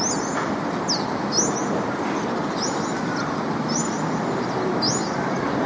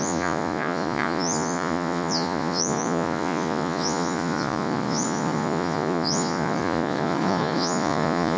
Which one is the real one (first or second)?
first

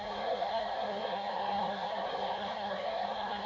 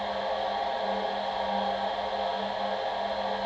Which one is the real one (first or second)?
second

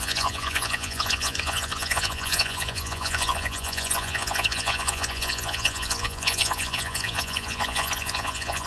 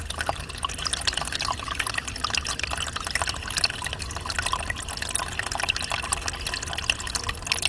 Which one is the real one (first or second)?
second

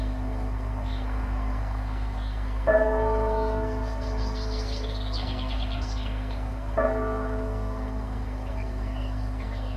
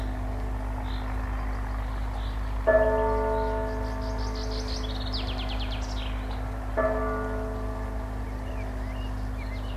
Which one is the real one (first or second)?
second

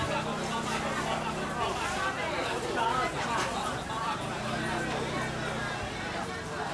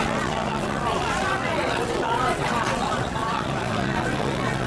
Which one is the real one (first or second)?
first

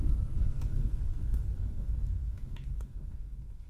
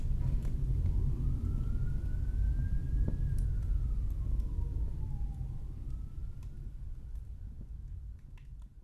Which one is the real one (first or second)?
second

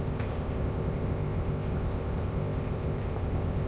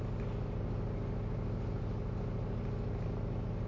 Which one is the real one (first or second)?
second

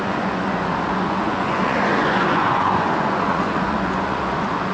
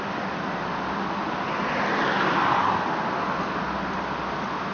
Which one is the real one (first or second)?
second